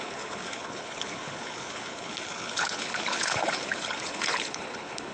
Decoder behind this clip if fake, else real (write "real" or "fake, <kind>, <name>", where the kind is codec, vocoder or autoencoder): fake, codec, HILCodec